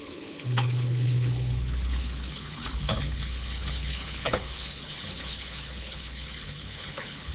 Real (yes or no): no